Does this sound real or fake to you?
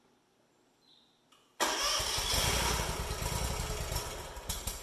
real